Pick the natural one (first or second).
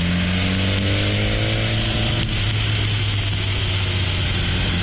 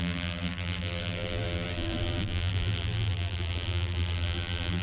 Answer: first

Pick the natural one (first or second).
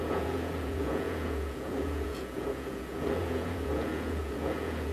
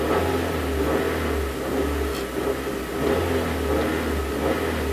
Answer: second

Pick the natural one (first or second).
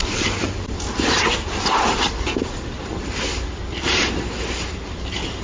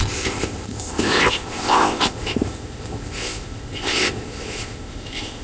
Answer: first